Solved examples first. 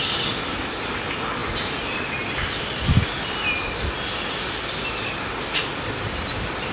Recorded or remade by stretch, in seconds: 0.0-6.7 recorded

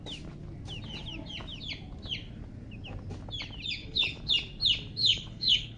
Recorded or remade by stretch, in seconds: 0.0-3.8 recorded; 3.8-4.3 remade; 4.3-5.0 recorded; 5.0-5.8 remade

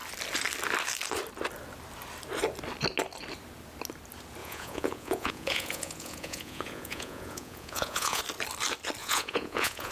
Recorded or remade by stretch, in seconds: 0.0-4.4 recorded; 4.4-8.2 remade; 8.2-9.0 recorded; 9.0-9.9 remade

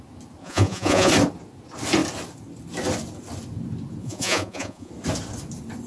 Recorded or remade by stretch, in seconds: 0.0-0.4 recorded; 0.4-1.1 remade; 1.1-4.0 recorded; 4.0-4.9 remade; 4.9-5.9 recorded

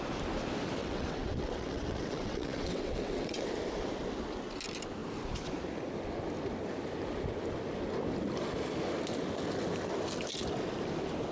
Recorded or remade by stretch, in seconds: 0.0-0.8 recorded; 0.8-3.5 remade; 3.5-11.3 recorded

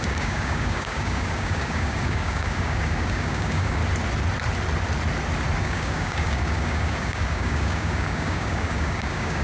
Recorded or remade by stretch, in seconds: 0.0-3.8 remade; 3.8-5.6 recorded; 5.6-9.4 remade

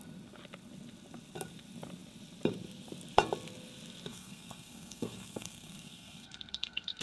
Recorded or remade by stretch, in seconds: 0.0-4.1 recorded; 4.1-7.0 remade

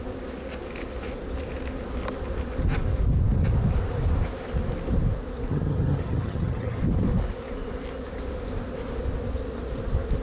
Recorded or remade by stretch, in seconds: 0.0-5.5 recorded; 5.5-6.8 remade; 6.8-10.2 recorded